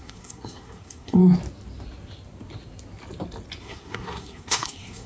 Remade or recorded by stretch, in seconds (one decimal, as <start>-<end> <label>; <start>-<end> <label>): 0.0-1.2 remade; 1.2-3.6 recorded; 3.6-5.1 remade